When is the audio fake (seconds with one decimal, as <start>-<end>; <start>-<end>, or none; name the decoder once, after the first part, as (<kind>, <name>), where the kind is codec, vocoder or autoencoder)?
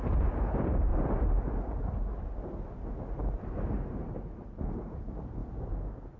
0.0-0.9 (vocoder, BigVGAN v2); 4.6-6.2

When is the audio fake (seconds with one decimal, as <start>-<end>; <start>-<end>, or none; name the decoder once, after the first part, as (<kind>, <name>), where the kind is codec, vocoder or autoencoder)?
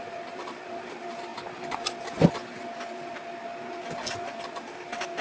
0.0-1.3 (vocoder, BigVGAN v2); 4.4-5.2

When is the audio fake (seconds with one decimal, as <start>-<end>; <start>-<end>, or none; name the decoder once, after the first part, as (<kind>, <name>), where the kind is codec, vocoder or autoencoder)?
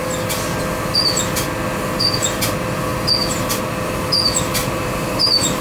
4.6-5.6 (vocoder, BigVGAN v2)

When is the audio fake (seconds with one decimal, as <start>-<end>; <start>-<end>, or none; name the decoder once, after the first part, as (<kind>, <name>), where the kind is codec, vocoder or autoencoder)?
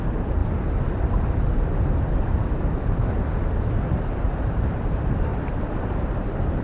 0.0-0.4 (vocoder, BigVGAN v2); 4.4-5.3; 5.8-6.6